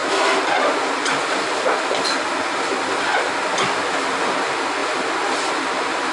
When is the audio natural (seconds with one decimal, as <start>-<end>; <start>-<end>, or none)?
0.0-6.1